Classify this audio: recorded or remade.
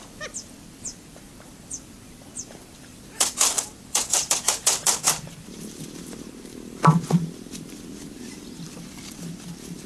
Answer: remade